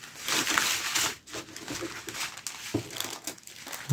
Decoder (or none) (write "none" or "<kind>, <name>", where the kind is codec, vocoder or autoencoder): none